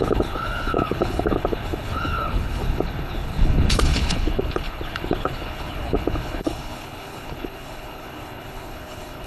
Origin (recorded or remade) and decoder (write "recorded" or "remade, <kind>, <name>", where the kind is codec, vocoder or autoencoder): remade, codec, HILCodec